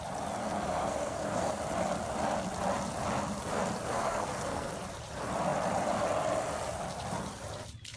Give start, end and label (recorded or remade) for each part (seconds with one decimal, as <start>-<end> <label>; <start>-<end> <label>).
0.0-0.4 recorded; 0.4-1.6 remade; 1.6-3.9 recorded; 3.9-4.7 remade; 4.7-8.0 recorded